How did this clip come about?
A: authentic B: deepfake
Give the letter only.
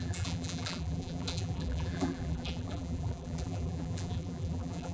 B